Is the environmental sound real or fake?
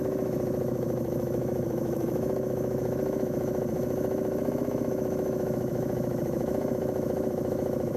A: fake